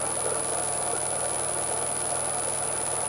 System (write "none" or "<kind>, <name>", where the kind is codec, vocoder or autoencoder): none